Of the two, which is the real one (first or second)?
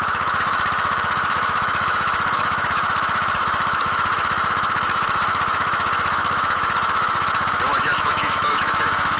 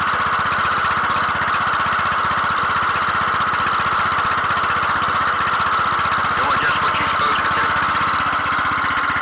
second